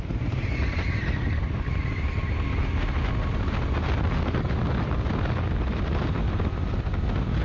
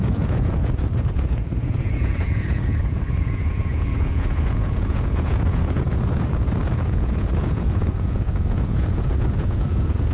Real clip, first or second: first